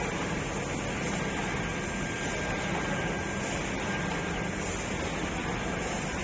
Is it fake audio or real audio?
real